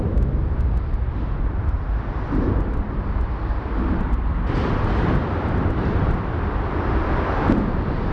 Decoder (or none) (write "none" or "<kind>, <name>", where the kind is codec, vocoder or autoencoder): vocoder, BigVGAN v2